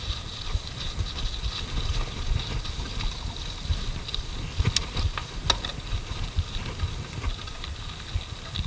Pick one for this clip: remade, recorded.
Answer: recorded